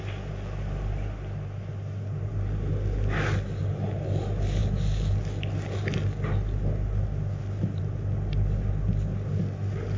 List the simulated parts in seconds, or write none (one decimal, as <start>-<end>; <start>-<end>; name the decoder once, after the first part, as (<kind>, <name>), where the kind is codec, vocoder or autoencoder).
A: none